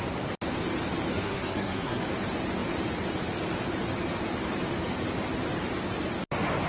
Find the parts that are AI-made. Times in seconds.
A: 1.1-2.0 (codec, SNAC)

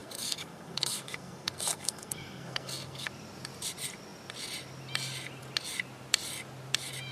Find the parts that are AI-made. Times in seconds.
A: 0.0-3.1 (codec, SNAC)

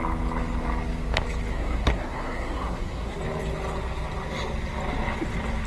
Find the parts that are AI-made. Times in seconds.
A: 1.5-3.2 (codec, SNAC)

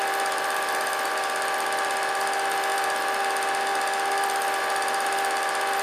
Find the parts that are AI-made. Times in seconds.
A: none

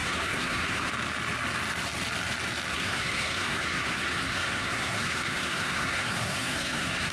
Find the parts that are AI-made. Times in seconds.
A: 0.0-0.9 (codec, SNAC); 2.7-7.1

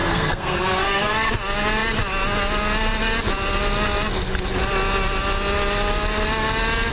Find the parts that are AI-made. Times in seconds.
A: 0.0-1.3 (codec, SNAC)

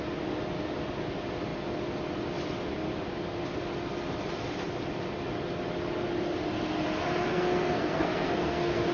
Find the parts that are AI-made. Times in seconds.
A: 7.3-8.9 (codec, SNAC)

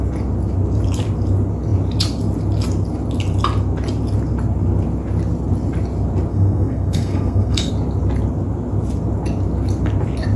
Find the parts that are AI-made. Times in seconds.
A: 6.3-7.7 (codec, SNAC)